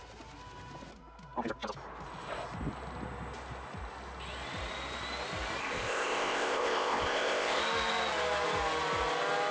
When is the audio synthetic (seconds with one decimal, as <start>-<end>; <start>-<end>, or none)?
5.6-7.6